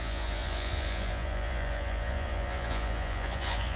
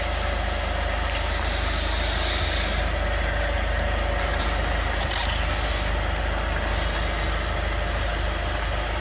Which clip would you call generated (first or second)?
first